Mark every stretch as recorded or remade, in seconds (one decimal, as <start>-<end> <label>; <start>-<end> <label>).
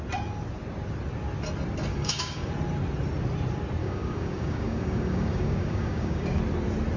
0.0-1.9 recorded; 1.9-2.5 remade; 2.5-3.8 recorded; 3.8-6.4 remade; 6.4-7.0 recorded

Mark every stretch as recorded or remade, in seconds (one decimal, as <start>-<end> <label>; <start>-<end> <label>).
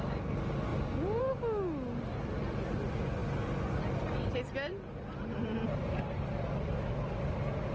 0.0-7.7 recorded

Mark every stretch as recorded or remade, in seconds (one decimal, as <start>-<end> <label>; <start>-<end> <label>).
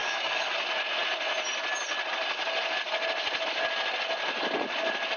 0.0-0.5 remade; 0.5-5.2 recorded